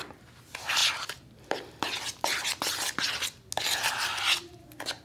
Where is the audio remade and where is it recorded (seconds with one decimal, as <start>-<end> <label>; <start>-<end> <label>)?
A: 0.0-5.0 recorded